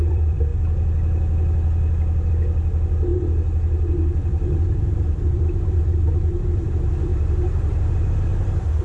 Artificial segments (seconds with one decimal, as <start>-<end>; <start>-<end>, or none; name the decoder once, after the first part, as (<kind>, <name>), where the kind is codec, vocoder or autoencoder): 0.0-0.5 (vocoder, BigVGAN v2); 2.3-8.8